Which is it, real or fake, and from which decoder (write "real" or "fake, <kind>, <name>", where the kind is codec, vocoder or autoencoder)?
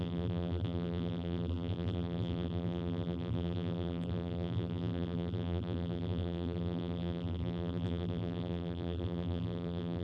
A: fake, vocoder, BigVGAN v2